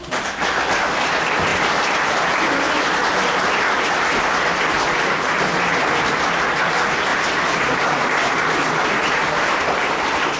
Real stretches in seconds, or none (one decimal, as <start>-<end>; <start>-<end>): 0.0-7.1; 8.0-9.0; 9.6-10.4